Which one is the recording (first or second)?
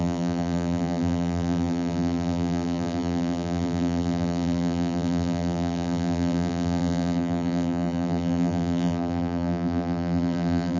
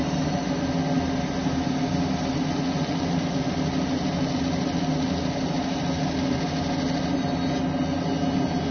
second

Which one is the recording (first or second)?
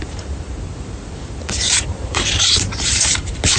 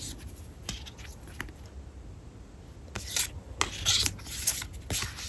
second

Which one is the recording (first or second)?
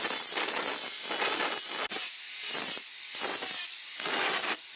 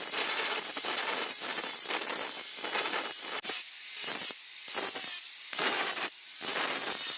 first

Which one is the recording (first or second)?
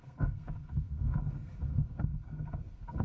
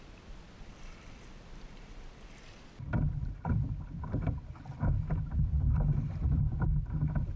second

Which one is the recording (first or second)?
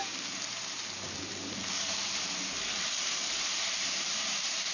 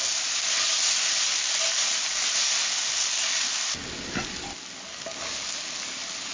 second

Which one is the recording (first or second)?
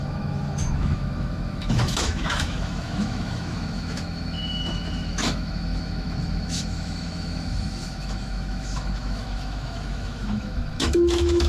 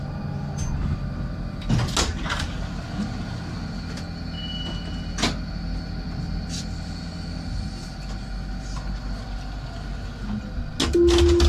second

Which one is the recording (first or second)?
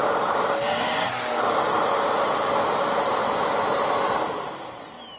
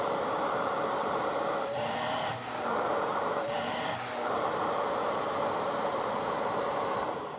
first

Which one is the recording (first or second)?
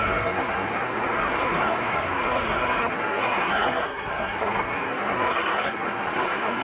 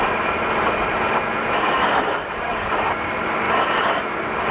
second